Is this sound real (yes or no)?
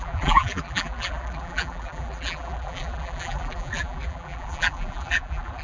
no